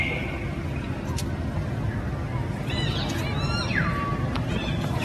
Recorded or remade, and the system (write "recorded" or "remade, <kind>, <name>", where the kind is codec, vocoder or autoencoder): recorded